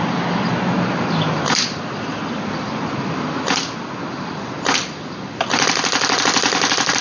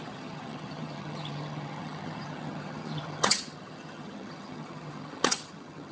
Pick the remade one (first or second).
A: second